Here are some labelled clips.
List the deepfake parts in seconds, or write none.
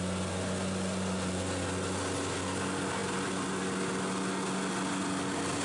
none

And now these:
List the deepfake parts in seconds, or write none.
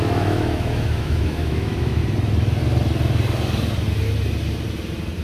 0.0-2.0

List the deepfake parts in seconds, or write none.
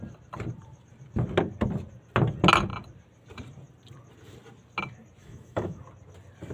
5.2-5.8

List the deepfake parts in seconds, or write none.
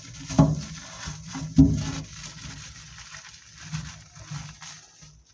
none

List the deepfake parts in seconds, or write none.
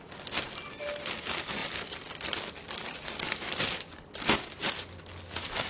none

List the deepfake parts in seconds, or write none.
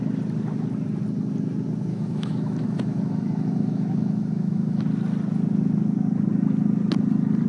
1.9-4.8